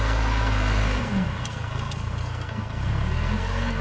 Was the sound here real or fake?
fake